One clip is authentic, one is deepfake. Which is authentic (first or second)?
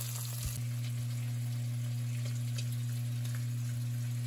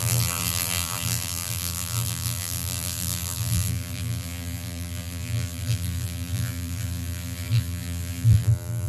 first